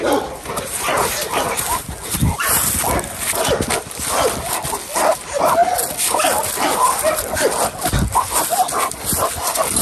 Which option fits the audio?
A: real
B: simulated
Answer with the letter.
A